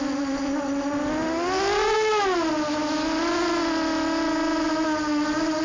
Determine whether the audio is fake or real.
real